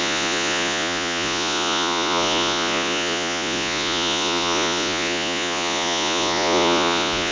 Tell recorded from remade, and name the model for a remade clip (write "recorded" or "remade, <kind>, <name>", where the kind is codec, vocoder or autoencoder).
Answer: remade, vocoder, Vocos